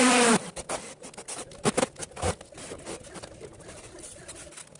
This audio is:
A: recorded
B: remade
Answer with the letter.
A